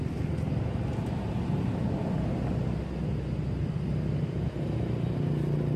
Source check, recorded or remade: recorded